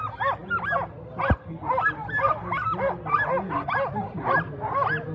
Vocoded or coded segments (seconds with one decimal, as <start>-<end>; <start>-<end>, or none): none